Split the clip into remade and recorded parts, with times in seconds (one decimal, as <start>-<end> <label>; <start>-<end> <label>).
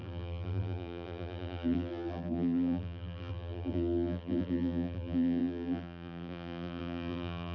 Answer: 0.0-7.5 remade